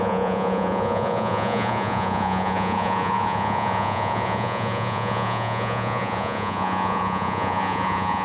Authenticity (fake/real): fake